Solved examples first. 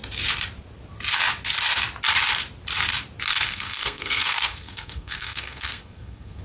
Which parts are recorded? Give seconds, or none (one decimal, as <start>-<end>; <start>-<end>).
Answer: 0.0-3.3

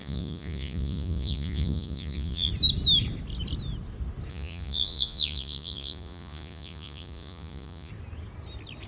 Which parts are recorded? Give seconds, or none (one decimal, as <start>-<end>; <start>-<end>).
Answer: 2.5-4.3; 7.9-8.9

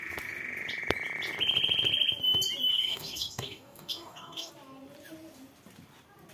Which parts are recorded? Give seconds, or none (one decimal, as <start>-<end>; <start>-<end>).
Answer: 0.0-2.7; 4.5-6.3